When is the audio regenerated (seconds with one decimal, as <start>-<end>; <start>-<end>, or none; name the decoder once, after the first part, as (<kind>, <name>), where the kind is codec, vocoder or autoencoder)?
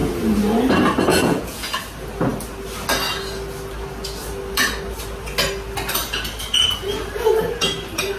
1.1-1.7 (vocoder, Vocos)